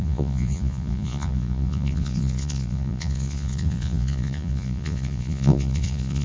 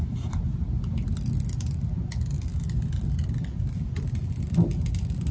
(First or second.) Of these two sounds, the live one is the second